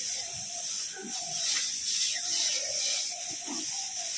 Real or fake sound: fake